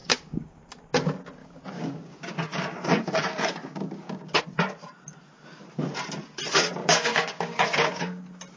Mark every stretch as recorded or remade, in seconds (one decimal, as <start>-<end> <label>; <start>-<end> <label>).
0.0-0.6 remade; 0.6-1.4 recorded; 1.4-4.4 remade; 4.4-6.8 recorded; 6.8-8.2 remade; 8.2-8.6 recorded